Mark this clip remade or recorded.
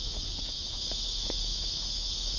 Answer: remade